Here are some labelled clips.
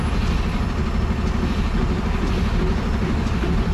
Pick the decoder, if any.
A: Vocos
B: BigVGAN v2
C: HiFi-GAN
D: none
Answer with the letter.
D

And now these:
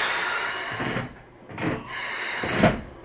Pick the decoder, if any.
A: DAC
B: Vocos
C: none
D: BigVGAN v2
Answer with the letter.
C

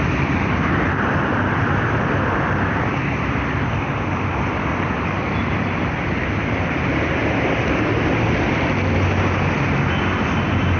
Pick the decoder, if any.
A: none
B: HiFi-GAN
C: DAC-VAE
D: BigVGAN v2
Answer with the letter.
A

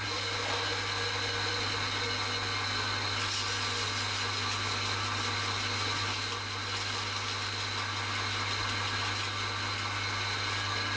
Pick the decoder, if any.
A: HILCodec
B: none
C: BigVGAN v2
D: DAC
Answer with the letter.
B